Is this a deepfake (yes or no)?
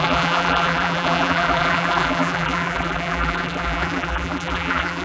yes